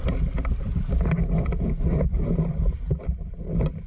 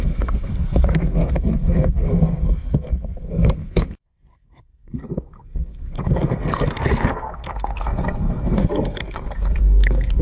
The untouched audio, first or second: first